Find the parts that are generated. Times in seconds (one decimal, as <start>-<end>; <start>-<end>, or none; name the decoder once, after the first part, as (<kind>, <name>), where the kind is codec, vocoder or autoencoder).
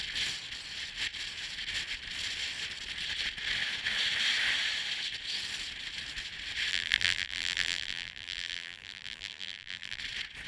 6.7-10.0 (vocoder, BigVGAN v2)